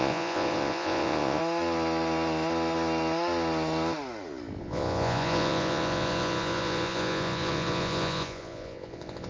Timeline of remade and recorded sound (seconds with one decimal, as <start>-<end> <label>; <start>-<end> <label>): 0.0-1.4 remade; 1.4-4.6 recorded; 4.6-9.3 remade